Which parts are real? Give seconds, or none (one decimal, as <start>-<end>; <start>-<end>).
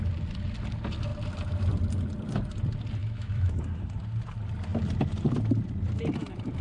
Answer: 0.0-3.0; 3.6-6.6